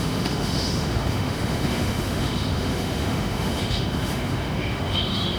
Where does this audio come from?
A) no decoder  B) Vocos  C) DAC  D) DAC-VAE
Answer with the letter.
D